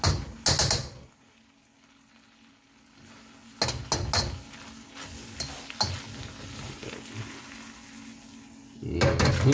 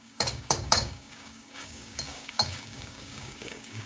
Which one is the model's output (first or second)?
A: second